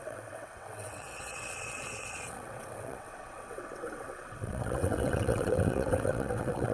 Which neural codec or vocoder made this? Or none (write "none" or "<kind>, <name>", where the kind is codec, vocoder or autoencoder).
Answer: vocoder, WaveNeXt